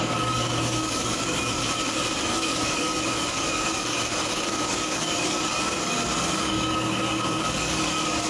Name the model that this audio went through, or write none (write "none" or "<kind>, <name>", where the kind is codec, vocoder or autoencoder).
codec, DAC